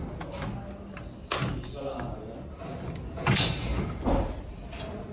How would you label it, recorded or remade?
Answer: recorded